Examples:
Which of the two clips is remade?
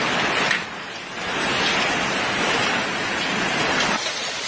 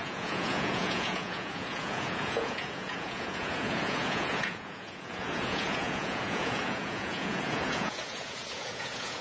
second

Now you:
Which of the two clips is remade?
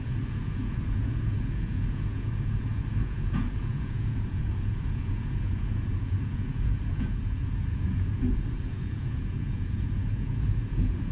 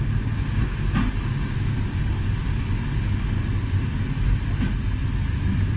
first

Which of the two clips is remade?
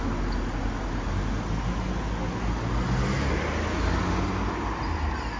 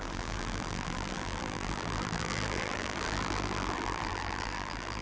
second